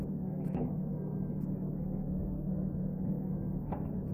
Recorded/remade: remade